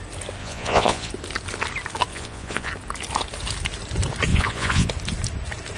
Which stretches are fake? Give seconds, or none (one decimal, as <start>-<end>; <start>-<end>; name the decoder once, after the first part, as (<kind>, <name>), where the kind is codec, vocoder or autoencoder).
0.4-1.1 (vocoder, Vocos); 2.1-2.7; 4.3-4.9